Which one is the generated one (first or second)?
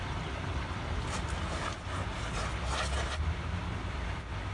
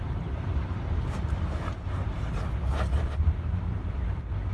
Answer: second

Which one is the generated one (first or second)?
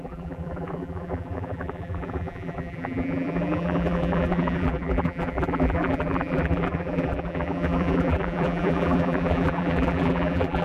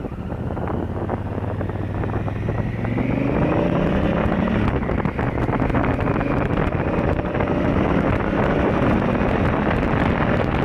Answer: first